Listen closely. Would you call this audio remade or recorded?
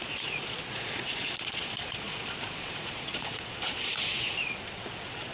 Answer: remade